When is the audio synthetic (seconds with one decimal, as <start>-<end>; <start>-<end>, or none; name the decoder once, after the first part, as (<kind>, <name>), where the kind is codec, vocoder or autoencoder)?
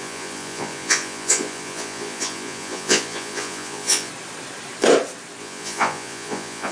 0.0-4.1 (vocoder, Vocos); 5.4-6.7